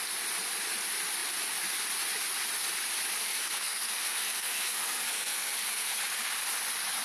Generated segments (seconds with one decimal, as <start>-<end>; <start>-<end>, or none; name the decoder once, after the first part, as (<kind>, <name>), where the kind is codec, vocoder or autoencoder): 3.2-6.0 (codec, SNAC)